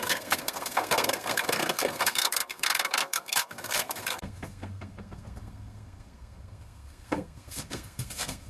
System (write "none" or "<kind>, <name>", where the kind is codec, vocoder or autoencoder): codec, SNAC